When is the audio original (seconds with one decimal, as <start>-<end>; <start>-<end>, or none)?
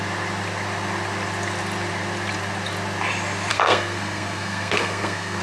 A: 0.0-3.5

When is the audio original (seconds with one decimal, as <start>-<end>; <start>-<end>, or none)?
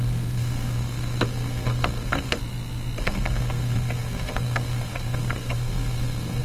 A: 2.4-3.0